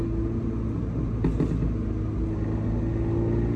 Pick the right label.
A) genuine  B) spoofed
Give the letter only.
A